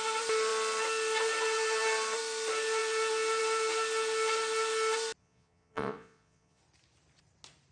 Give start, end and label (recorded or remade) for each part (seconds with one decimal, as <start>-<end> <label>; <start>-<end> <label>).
0.0-5.2 recorded; 5.2-6.6 remade; 6.6-7.7 recorded